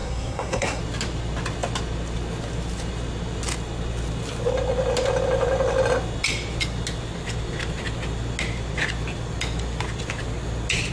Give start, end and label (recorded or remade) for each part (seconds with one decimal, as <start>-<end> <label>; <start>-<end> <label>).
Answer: 0.0-0.8 remade; 0.8-10.9 recorded